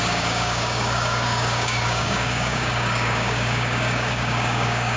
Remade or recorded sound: remade